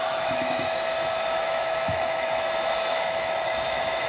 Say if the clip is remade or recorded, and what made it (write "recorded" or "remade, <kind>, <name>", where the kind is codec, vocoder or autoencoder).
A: remade, autoencoder, DAC-VAE